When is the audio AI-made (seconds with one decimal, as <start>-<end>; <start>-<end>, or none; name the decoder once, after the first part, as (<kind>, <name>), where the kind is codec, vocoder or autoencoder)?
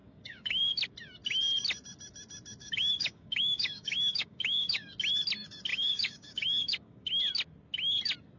0.0-0.7 (codec, DAC); 2.6-4.9; 5.7-7.1